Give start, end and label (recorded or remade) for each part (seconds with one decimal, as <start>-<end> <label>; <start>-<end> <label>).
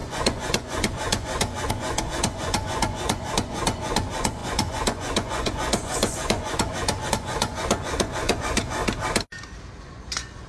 0.0-8.8 remade; 8.8-9.8 recorded; 9.8-10.5 remade